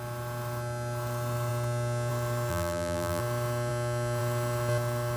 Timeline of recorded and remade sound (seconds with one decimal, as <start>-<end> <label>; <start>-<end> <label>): 0.0-2.5 recorded; 2.5-3.2 remade; 3.2-5.2 recorded